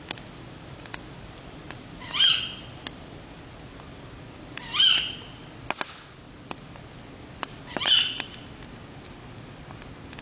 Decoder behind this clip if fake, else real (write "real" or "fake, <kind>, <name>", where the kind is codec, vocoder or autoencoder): real